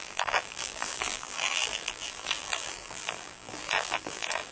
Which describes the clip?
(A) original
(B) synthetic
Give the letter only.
B